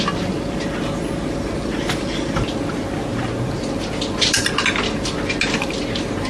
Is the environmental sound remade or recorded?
recorded